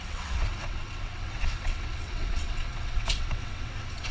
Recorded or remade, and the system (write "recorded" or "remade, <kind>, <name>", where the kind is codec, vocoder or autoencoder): remade, vocoder, WaveNeXt